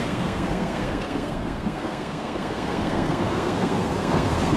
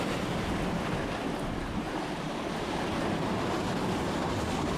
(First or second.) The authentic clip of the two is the second